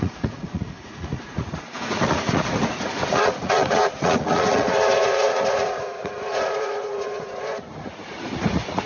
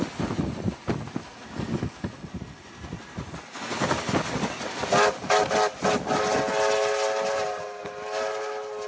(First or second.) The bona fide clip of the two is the second